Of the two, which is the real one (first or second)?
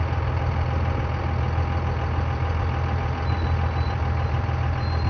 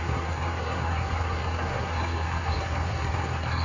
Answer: first